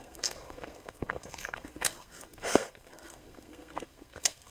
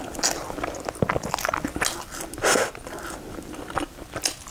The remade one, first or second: first